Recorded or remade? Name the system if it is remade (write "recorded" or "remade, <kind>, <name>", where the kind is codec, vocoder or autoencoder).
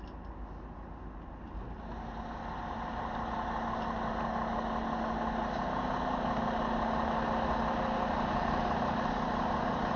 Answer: recorded